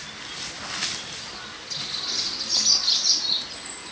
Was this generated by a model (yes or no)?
no